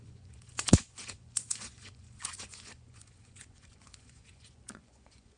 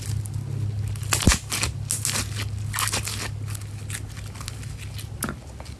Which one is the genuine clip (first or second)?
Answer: second